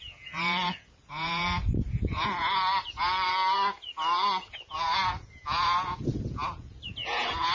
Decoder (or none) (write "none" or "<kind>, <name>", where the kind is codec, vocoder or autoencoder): vocoder, Vocos